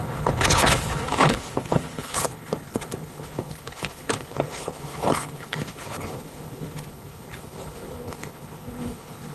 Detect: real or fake fake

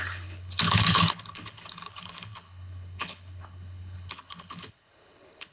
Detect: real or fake fake